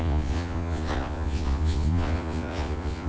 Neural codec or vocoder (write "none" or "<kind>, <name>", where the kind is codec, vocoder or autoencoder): vocoder, Vocos